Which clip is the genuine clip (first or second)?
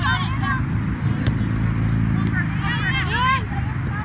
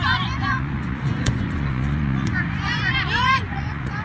first